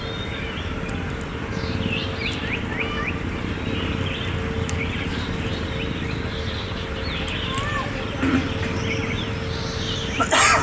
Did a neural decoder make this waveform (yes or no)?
no